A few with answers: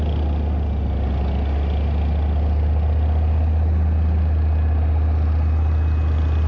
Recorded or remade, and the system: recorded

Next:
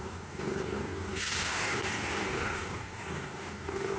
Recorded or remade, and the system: remade, codec, DAC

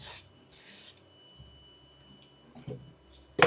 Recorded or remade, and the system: recorded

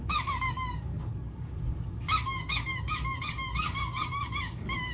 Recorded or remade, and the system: remade, codec, DAC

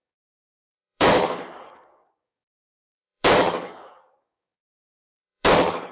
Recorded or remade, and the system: remade, codec, DAC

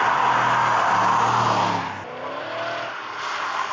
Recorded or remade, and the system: recorded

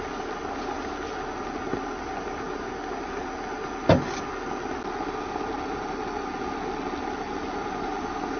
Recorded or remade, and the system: recorded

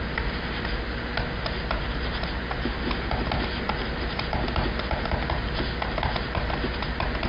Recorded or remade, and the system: recorded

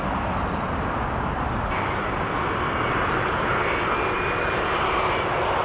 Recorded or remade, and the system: recorded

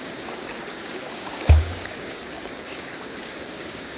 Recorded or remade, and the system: remade, codec, DAC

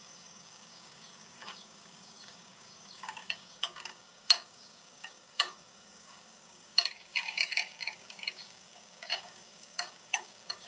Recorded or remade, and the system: remade, codec, DAC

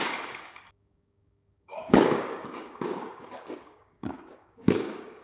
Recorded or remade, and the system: remade, codec, DAC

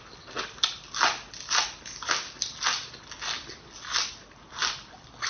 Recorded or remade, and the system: recorded